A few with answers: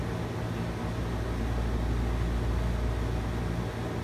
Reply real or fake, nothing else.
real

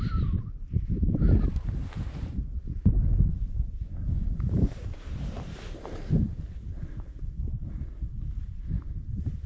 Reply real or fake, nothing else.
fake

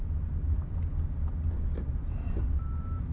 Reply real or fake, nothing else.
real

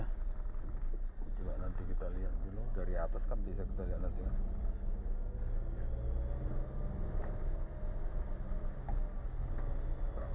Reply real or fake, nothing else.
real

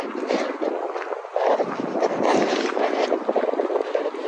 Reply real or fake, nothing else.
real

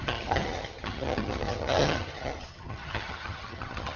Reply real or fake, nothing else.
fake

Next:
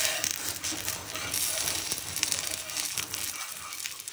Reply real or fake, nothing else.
real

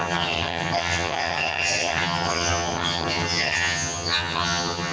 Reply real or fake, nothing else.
fake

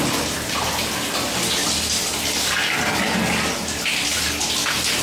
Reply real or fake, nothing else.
real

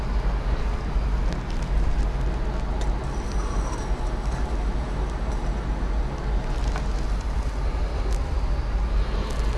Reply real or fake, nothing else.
real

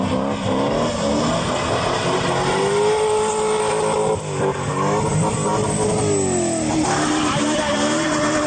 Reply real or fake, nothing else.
real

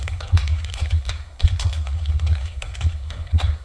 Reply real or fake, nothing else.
fake